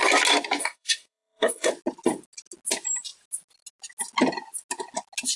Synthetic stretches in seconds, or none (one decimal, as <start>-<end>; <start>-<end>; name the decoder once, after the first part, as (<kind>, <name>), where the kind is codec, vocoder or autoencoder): 0.6-1.7 (codec, SNAC)